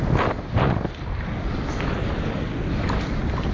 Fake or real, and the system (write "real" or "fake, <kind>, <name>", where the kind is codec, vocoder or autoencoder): real